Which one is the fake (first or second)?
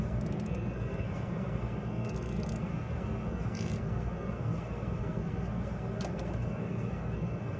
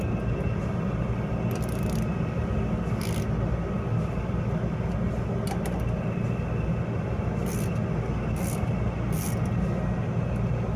first